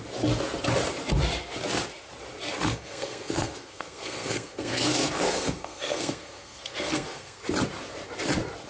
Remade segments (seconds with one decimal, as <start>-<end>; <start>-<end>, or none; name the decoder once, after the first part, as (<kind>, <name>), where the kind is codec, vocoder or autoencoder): 2.7-7.4 (codec, SNAC)